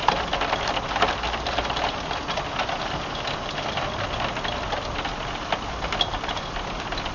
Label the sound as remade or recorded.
recorded